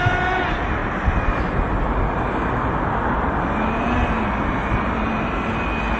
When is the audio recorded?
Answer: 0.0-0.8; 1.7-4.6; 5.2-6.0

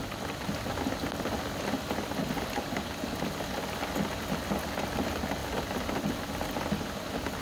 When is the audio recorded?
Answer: 0.0-7.4